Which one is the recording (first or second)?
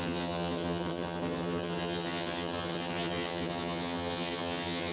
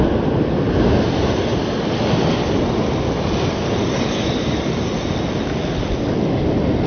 second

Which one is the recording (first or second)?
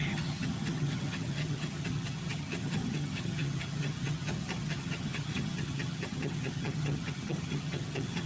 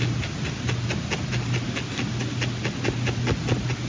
second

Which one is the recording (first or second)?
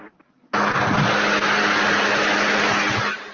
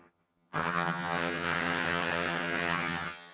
first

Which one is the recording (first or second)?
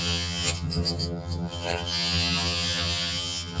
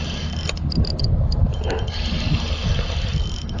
second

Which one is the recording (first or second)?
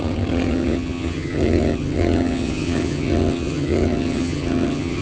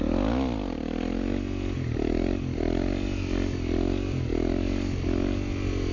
second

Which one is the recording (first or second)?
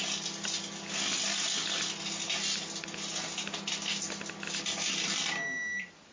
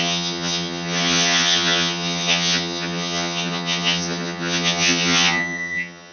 first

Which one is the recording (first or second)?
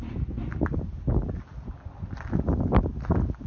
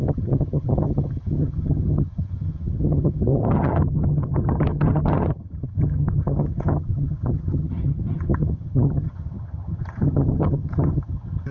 first